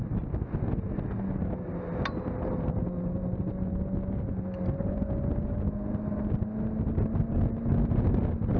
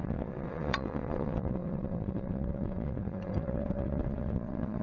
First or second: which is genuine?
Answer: first